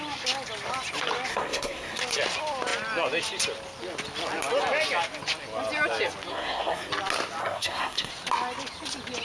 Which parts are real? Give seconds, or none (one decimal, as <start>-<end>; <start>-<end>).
0.0-1.3; 2.0-6.3; 6.9-7.4; 8.1-9.2